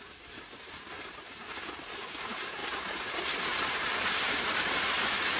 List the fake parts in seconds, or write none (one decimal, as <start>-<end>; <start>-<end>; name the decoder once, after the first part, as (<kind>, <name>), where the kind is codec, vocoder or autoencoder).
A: 0.0-1.4 (vocoder, BigVGAN v2); 2.0-2.6; 3.7-5.4